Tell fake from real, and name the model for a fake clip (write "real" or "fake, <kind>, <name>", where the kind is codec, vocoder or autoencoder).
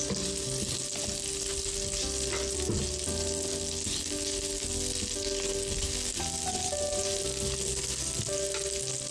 real